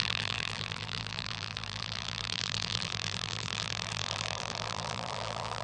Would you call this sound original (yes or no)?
no